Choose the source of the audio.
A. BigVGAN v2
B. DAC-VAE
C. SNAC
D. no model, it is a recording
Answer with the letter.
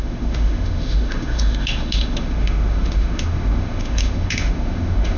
B